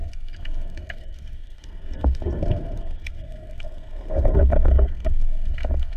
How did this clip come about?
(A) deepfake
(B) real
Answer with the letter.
A